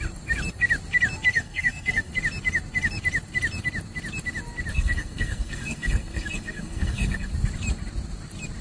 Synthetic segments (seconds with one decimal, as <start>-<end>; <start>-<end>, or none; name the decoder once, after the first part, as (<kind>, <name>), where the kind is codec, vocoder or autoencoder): 1.3-2.1 (codec, SNAC); 4.7-7.3

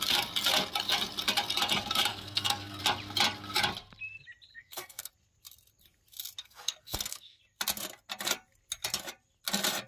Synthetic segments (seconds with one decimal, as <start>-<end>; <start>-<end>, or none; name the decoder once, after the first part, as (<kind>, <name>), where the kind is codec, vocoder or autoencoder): 2.1-2.8 (codec, SNAC); 4.5-5.1; 6.4-7.4

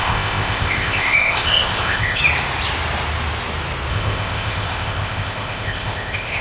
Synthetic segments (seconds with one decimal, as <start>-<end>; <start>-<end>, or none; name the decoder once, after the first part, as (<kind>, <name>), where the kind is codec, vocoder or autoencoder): 0.0-2.2 (codec, ZipCodec); 3.9-6.4